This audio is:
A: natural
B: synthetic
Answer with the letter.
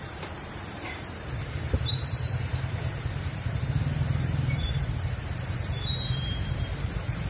B